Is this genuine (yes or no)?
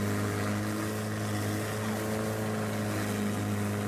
yes